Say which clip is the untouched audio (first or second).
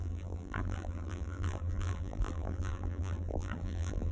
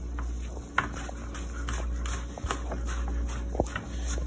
second